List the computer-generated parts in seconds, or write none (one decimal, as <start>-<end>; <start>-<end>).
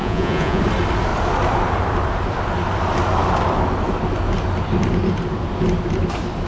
0.0-0.6